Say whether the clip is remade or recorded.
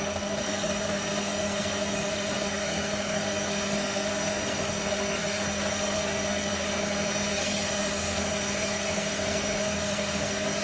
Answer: remade